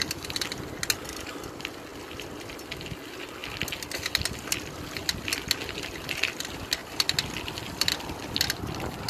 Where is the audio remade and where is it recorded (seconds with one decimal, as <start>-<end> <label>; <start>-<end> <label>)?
0.0-9.1 recorded